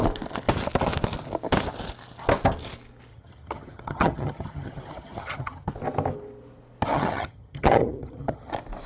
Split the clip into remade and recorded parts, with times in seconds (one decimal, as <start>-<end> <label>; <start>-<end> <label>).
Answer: 0.0-3.1 recorded; 3.1-5.7 remade; 5.7-6.9 recorded; 6.9-8.5 remade; 8.5-8.9 recorded